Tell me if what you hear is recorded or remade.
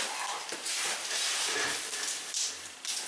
remade